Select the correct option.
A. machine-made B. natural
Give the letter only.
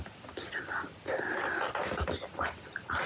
B